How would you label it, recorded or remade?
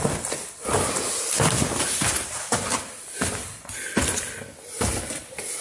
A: recorded